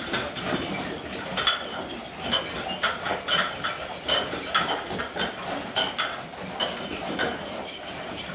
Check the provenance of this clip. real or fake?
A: real